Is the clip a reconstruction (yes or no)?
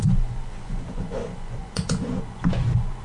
yes